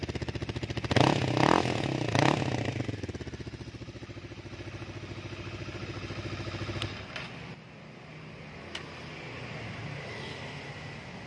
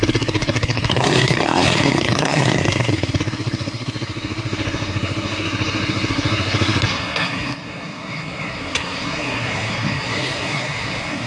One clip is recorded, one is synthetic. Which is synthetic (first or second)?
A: second